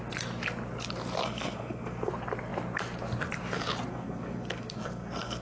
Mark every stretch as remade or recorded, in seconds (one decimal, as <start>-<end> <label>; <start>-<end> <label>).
0.0-1.2 recorded; 1.2-2.1 remade; 2.1-3.9 recorded; 3.9-5.4 remade